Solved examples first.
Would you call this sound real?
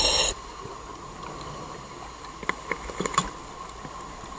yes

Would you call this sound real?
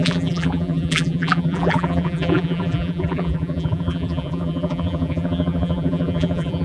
no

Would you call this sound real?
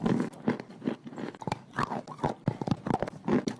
no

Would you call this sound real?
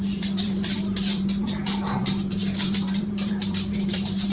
no